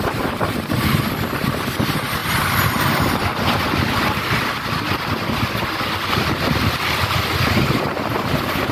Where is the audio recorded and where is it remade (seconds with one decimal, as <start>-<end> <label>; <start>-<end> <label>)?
0.0-8.7 recorded